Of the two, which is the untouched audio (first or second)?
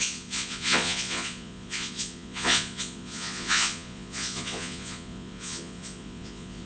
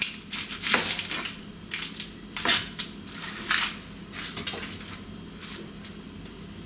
second